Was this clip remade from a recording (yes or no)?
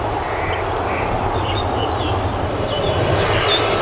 no